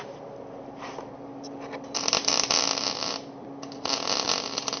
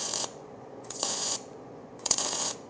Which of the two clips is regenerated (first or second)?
second